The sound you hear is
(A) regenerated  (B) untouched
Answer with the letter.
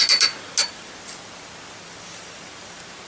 B